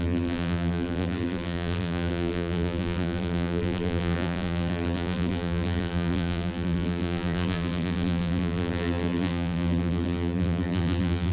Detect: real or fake fake